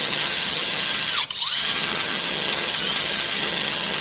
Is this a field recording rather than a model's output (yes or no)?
no